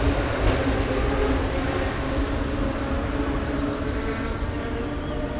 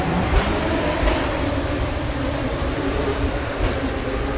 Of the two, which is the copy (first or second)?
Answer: second